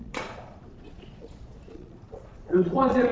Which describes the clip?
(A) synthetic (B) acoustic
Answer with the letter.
A